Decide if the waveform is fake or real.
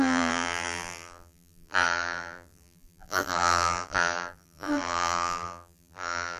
fake